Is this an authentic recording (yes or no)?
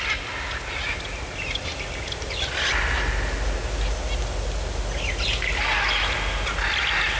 yes